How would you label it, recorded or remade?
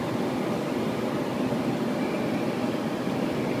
recorded